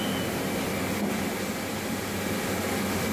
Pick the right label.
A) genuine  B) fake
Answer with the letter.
A